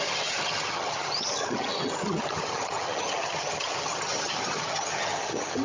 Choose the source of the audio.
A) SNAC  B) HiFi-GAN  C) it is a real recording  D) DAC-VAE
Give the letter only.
B